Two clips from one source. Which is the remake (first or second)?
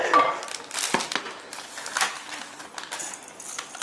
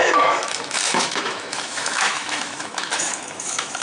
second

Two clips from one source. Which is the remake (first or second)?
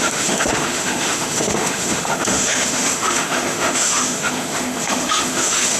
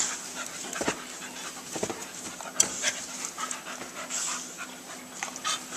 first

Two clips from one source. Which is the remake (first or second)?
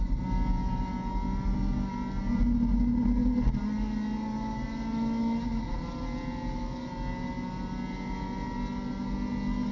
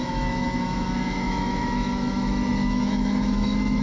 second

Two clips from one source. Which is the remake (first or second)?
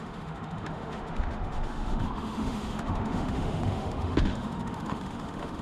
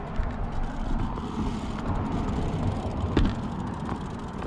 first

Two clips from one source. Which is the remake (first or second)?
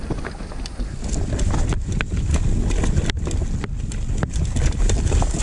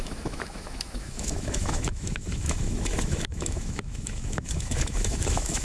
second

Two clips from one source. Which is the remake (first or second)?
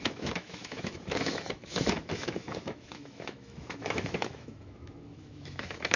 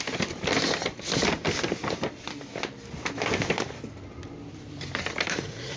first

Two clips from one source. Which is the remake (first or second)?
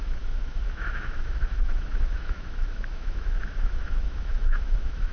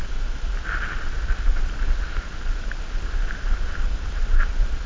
first